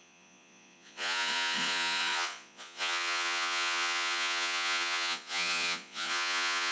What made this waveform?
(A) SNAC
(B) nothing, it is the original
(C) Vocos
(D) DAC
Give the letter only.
C